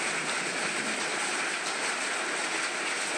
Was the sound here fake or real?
real